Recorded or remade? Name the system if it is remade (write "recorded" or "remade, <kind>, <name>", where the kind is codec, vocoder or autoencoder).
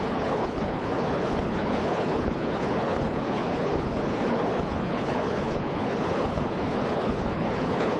remade, codec, HILCodec